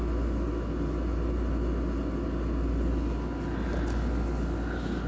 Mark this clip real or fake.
real